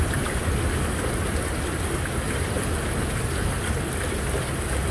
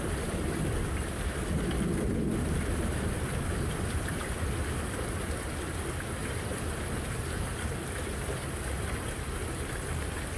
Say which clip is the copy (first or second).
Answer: second